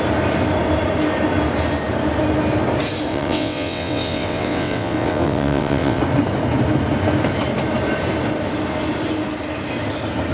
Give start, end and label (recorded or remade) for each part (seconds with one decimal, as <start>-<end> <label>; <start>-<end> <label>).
0.0-3.1 recorded; 3.1-6.0 remade; 6.0-10.3 recorded